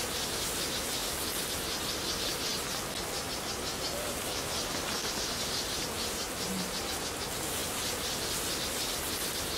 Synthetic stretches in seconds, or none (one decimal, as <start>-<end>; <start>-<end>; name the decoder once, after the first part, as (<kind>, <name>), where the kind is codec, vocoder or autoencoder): none